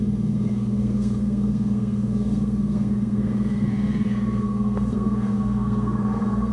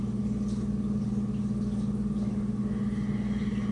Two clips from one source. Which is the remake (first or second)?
first